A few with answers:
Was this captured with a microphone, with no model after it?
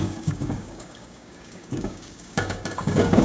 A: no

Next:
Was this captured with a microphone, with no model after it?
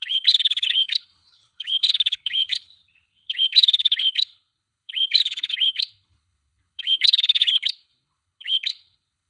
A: no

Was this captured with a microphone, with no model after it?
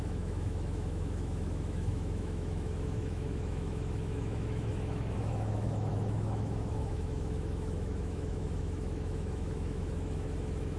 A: no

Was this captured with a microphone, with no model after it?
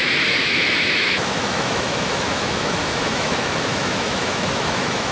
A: no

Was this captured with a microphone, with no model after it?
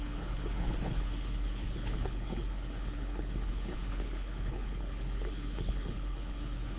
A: no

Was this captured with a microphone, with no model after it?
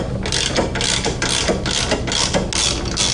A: yes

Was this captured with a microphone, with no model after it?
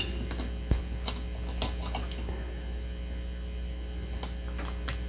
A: yes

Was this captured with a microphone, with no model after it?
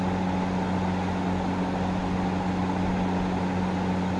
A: yes